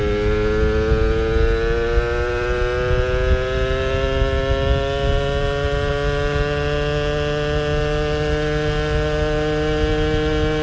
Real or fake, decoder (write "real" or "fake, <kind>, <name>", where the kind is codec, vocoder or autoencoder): real